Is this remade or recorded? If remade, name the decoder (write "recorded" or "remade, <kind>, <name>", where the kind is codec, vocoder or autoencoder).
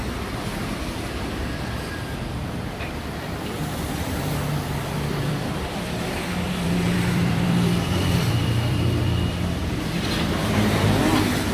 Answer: remade, vocoder, BigVGAN v2